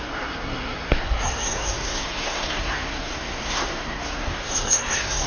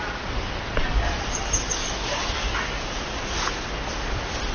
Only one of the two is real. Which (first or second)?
second